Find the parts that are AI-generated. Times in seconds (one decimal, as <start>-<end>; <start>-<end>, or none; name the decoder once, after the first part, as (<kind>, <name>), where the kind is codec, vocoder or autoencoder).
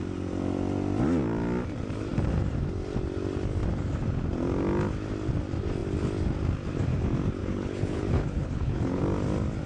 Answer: 7.4-9.0 (codec, HILCodec)